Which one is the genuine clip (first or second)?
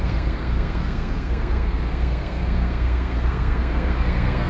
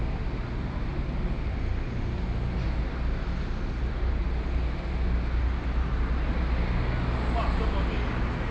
second